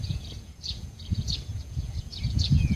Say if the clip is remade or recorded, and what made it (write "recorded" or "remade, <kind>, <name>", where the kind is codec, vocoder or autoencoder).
remade, vocoder, Vocos